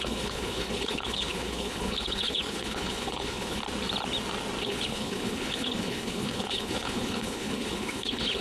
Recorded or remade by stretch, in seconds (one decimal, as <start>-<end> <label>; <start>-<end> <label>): 0.0-3.6 remade; 3.6-4.6 recorded; 4.6-8.4 remade